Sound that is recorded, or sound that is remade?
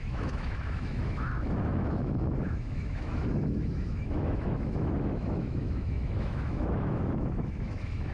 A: remade